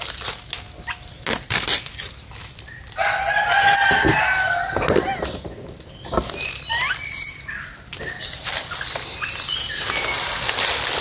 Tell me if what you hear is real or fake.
real